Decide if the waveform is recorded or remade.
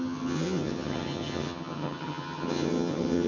remade